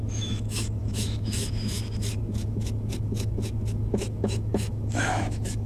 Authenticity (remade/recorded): remade